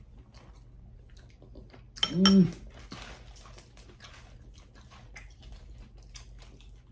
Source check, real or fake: real